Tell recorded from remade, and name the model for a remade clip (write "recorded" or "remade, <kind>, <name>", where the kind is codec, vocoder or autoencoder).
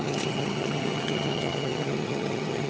remade, vocoder, HiFi-GAN